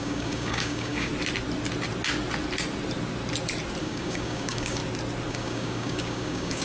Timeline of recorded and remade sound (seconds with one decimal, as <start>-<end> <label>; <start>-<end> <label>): 0.0-1.1 remade; 1.1-3.8 recorded; 3.8-4.8 remade; 4.8-5.3 recorded; 5.3-6.6 remade